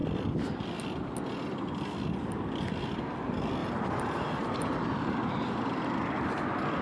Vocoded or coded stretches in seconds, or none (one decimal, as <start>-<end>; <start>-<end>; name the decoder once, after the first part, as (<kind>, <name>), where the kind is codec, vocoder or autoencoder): 3.6-5.2 (vocoder, BigVGAN v2)